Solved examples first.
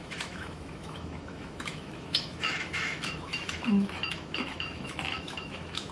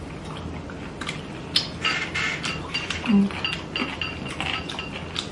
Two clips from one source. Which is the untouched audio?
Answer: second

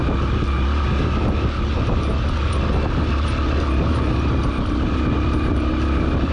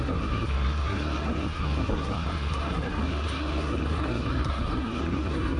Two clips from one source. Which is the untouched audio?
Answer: first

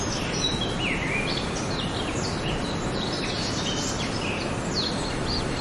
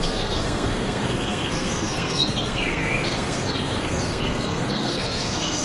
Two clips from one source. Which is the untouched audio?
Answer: first